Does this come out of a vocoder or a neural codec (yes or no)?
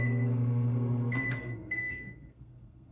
yes